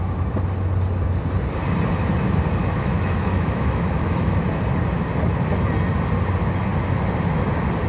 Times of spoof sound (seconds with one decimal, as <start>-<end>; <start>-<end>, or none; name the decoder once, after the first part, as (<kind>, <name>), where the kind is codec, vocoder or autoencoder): 2.6-4.3 (autoencoder, DAC-VAE)